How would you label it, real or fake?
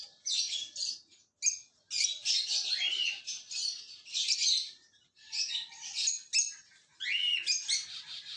real